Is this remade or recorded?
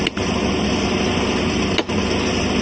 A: recorded